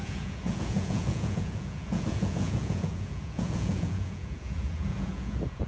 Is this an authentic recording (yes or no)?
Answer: no